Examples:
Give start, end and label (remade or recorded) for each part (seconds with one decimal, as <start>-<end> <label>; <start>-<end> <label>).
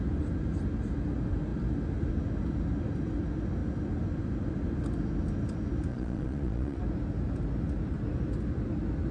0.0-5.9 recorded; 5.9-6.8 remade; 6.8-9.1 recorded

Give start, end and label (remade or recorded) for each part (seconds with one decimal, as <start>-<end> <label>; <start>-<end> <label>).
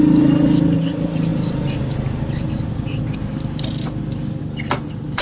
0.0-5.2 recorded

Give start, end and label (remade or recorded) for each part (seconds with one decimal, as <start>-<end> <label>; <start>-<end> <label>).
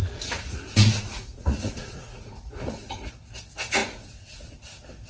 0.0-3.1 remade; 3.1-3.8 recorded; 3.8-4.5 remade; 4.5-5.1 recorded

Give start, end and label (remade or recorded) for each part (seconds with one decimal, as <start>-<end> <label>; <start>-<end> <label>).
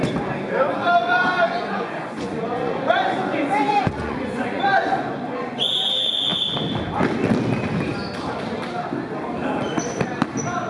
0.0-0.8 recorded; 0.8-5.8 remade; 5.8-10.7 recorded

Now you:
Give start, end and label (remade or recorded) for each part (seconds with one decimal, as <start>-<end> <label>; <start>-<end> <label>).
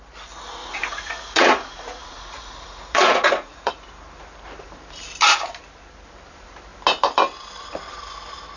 0.0-0.6 recorded; 0.6-3.7 remade; 3.7-8.6 recorded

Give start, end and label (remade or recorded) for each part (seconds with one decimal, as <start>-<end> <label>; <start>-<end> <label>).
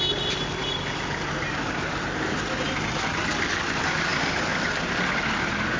0.0-5.8 recorded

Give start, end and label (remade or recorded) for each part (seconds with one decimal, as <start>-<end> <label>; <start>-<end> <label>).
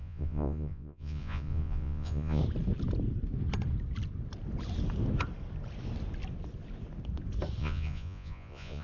0.0-2.4 remade; 2.4-7.6 recorded; 7.6-8.8 remade